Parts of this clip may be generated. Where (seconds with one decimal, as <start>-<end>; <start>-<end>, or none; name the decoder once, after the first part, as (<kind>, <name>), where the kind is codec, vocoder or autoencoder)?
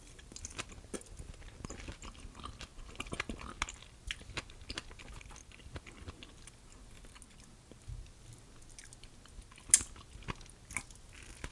none